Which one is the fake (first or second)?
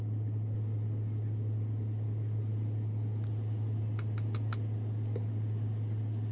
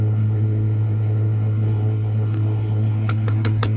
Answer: second